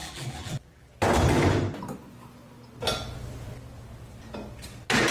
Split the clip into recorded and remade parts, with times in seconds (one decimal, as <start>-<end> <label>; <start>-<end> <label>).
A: 0.0-0.9 remade; 0.9-5.1 recorded